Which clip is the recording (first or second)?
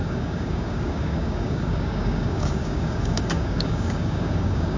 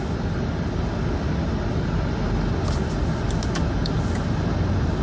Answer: second